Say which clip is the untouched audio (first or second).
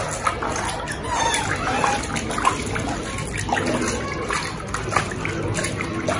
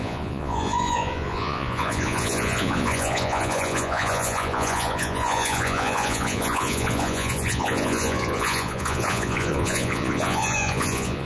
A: first